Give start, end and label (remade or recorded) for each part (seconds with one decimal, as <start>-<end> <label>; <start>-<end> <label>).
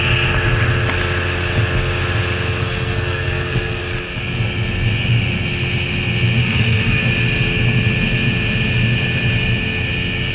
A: 0.0-2.6 recorded; 2.6-3.8 remade; 3.8-6.4 recorded; 6.4-7.0 remade; 7.0-10.3 recorded